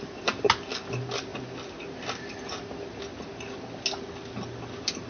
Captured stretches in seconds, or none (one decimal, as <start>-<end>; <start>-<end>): 0.0-5.1